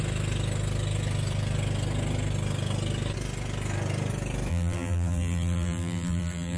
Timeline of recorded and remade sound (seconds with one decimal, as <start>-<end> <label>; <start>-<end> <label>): 0.0-4.5 recorded; 4.5-6.6 remade